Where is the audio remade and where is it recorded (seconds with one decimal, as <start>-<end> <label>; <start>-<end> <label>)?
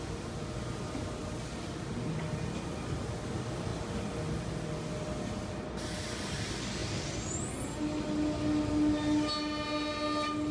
0.0-10.5 recorded